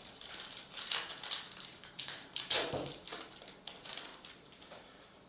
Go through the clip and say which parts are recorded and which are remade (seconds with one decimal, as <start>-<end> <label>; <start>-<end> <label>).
0.0-0.9 remade; 0.9-1.7 recorded; 1.7-3.3 remade; 3.3-4.1 recorded; 4.1-5.3 remade